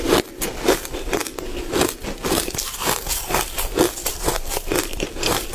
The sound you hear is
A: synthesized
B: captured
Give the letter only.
A